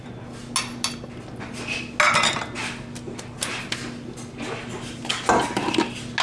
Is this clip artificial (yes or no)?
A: no